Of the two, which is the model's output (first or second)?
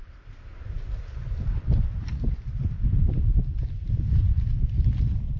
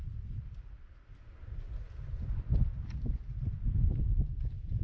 first